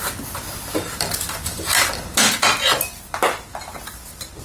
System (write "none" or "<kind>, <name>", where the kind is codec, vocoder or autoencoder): none